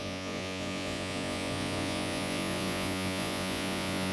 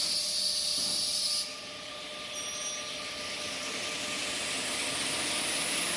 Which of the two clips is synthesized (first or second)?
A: first